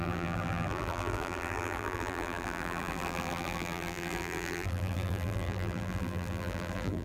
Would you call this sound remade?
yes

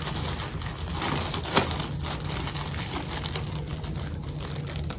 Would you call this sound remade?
no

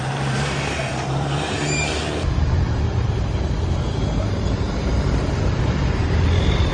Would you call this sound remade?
yes